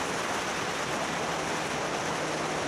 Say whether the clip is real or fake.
real